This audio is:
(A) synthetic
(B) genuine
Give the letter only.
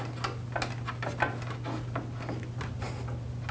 B